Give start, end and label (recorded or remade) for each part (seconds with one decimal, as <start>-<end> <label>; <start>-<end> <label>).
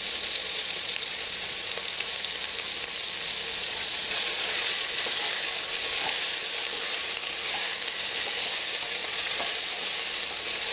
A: 0.0-0.4 recorded; 0.4-1.7 remade; 1.7-3.6 recorded; 3.6-5.1 remade; 5.1-9.0 recorded; 9.0-9.5 remade; 9.5-10.7 recorded